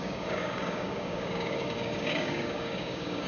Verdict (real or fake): fake